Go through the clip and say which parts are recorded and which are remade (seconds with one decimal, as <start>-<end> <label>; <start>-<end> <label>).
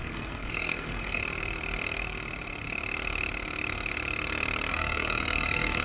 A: 0.0-1.2 remade; 1.2-4.7 recorded; 4.7-5.8 remade